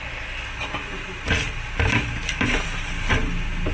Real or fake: real